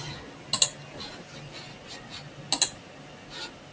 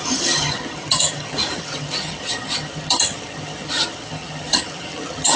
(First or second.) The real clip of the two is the first